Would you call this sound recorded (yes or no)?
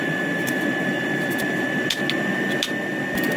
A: yes